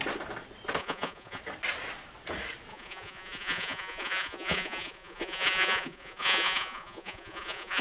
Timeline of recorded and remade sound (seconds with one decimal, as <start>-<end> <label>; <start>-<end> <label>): 0.0-0.8 recorded; 0.8-1.4 remade; 1.4-2.7 recorded; 2.7-7.8 remade